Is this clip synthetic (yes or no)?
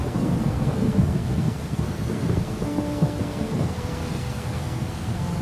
yes